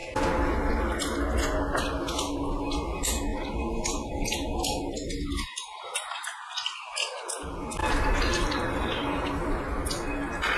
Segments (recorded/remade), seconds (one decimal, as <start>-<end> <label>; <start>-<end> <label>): 0.0-7.8 recorded; 7.8-9.6 remade; 9.6-10.6 recorded